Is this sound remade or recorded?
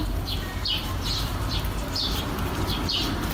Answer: remade